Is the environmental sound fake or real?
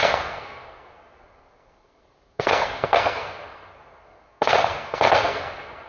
fake